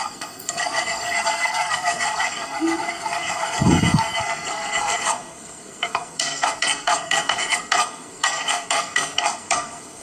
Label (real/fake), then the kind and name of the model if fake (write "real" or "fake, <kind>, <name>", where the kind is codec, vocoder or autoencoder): fake, codec, SNAC